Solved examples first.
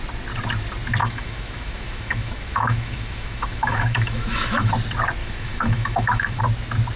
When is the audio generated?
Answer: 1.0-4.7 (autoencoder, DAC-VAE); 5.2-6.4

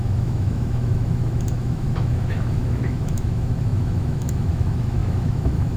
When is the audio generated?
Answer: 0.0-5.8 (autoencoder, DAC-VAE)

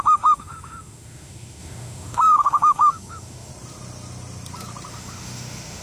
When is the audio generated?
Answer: 0.0-3.5 (autoencoder, DAC-VAE); 4.9-5.8

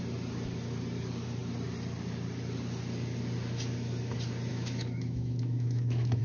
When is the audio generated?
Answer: 4.5-6.2 (autoencoder, DAC-VAE)

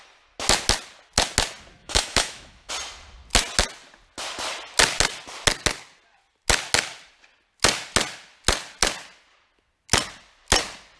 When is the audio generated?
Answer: 1.8-2.7 (autoencoder, DAC-VAE)

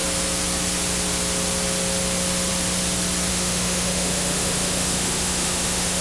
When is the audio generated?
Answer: 3.3-6.0 (autoencoder, DAC-VAE)